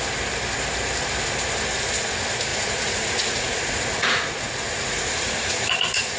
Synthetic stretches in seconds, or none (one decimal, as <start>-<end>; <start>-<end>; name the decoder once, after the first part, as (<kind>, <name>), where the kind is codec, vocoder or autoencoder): 2.5-6.2 (vocoder, Vocos)